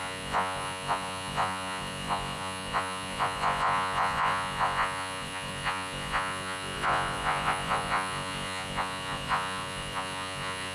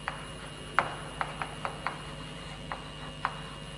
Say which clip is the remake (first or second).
first